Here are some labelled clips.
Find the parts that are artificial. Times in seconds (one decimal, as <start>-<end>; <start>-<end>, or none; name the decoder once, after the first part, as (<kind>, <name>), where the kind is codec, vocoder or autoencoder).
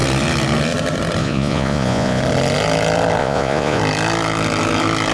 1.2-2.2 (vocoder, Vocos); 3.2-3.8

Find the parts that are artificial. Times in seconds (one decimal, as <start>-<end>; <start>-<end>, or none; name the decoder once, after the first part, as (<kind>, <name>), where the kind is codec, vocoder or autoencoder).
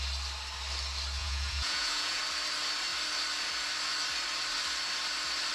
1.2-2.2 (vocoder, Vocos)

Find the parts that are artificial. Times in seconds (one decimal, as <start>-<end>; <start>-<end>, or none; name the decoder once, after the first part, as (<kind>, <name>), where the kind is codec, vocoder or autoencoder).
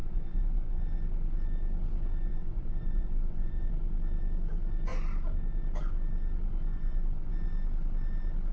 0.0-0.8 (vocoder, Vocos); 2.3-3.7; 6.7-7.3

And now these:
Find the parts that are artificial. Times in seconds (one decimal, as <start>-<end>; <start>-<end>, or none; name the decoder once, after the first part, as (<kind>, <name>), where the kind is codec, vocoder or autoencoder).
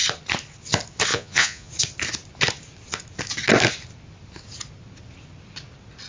1.1-1.7 (vocoder, Vocos)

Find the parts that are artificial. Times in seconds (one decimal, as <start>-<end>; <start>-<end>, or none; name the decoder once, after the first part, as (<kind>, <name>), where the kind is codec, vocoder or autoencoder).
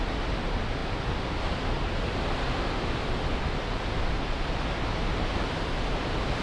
none